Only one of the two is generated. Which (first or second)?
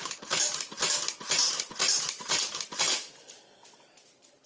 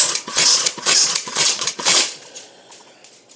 second